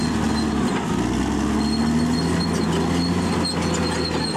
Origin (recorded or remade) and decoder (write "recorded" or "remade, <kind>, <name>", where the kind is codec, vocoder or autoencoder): recorded